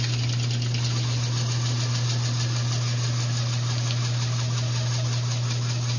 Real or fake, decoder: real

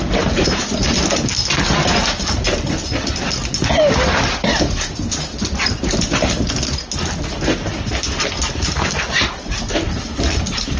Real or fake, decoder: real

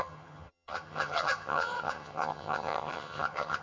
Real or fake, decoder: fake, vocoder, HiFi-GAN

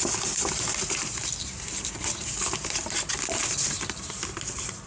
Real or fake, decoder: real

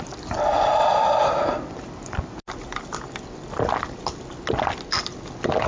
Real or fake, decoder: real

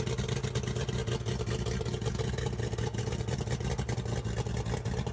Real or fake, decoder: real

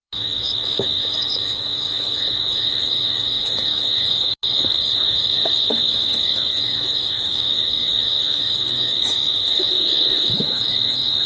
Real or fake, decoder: fake, autoencoder, DAC-VAE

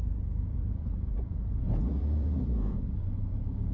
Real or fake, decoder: fake, vocoder, Vocos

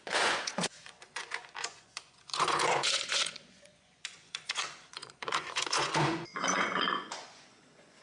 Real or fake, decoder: fake, vocoder, Vocos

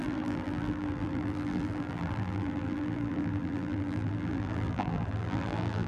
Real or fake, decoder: fake, vocoder, BigVGAN v2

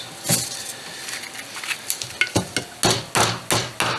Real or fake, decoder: real